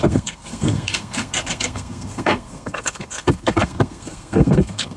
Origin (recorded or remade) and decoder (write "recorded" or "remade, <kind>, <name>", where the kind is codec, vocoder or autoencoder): remade, codec, SNAC